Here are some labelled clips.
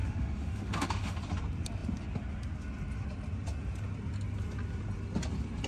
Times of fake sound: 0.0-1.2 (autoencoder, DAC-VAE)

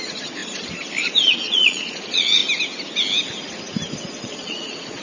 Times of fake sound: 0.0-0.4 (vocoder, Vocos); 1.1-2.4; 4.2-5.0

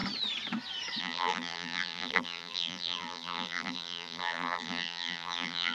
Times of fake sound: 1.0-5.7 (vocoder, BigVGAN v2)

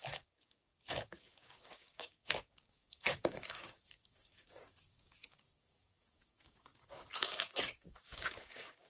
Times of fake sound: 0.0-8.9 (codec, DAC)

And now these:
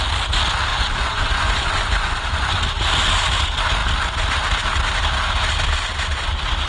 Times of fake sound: 0.7-2.6 (vocoder, Vocos)

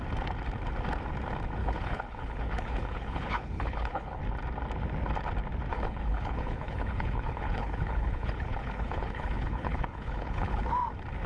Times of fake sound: 1.6-4.2 (codec, HILCodec); 5.7-10.6